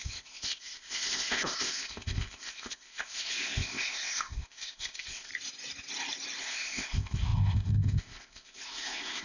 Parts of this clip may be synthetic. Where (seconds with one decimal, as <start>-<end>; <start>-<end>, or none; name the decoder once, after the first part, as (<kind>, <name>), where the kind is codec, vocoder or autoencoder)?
0.0-5.3 (codec, ZipCodec); 6.4-9.2